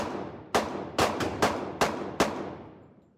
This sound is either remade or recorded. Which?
recorded